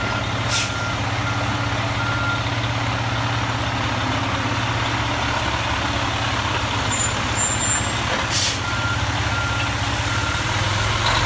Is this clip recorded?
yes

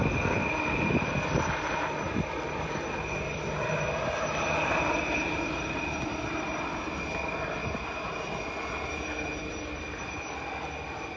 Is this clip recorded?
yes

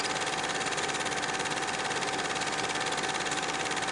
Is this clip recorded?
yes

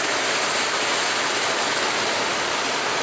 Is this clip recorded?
yes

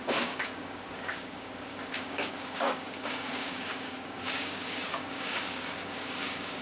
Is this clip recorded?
no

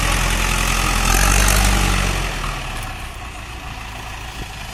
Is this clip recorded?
yes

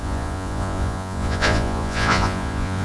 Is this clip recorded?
no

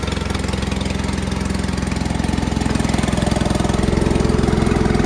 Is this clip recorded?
yes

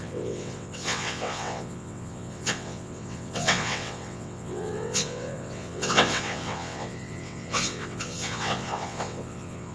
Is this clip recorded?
no